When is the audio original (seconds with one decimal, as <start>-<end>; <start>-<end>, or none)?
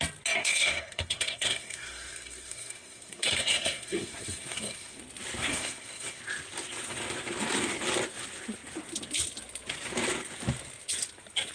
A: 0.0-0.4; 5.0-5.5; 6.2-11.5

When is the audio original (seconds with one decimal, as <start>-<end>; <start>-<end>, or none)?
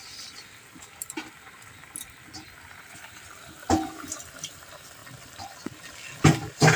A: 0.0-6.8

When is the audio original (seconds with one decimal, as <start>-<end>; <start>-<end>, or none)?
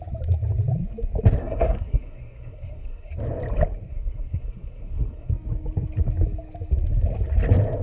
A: 0.0-1.4; 3.1-3.9; 5.3-7.8